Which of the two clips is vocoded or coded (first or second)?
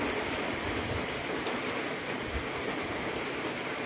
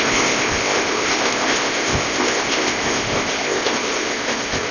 second